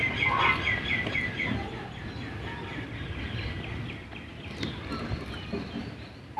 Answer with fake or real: real